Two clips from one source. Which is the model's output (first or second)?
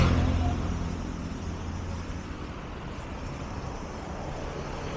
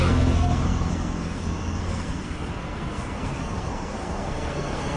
second